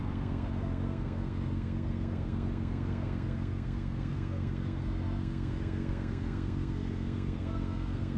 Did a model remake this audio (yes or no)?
yes